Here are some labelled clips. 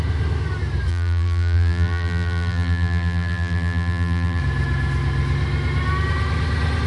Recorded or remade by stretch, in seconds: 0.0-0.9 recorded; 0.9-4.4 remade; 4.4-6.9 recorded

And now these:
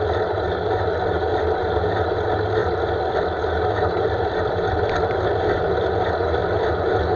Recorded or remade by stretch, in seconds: 0.0-2.6 recorded; 2.6-5.9 remade; 5.9-7.2 recorded